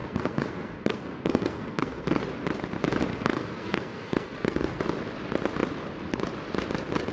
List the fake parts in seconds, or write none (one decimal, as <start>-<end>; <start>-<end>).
0.0-2.2; 3.1-4.8